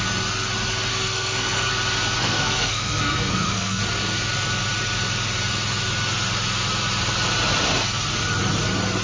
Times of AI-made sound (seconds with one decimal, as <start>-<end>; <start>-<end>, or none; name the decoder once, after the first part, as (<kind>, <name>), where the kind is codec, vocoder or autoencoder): 0.9-1.7 (codec, SNAC); 2.2-3.8